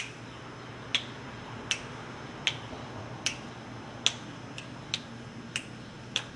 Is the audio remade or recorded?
recorded